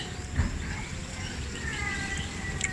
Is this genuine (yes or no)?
yes